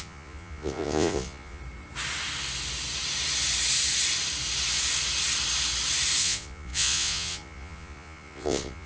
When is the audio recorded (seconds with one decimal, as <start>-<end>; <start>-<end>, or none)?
1.6-6.2